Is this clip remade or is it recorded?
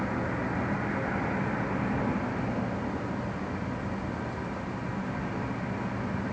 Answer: recorded